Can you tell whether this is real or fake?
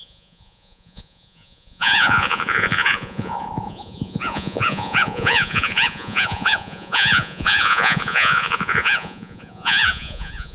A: fake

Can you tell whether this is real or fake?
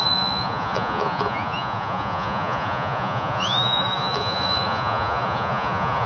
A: fake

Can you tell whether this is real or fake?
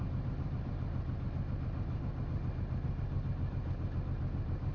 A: real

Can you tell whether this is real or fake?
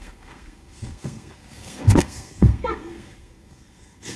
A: fake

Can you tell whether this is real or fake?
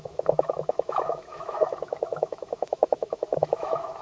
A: fake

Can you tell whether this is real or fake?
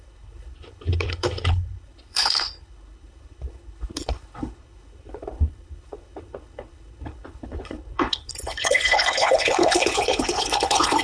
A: fake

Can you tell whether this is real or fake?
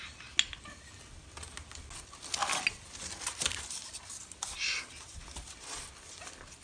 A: real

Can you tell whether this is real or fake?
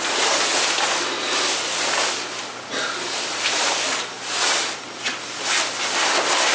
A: real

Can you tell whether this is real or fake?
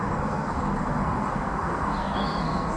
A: fake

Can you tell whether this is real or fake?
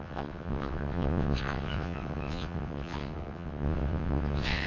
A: fake